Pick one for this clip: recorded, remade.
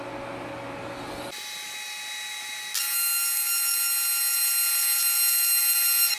recorded